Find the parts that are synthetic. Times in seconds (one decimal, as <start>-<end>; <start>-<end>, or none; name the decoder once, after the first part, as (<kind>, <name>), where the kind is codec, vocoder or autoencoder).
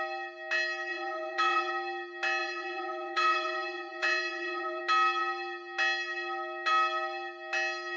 0.9-1.7 (vocoder, Vocos); 2.4-4.8